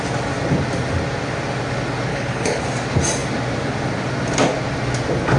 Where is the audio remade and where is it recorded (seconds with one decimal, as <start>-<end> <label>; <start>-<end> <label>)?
0.0-2.1 recorded; 2.1-2.6 remade; 2.6-5.4 recorded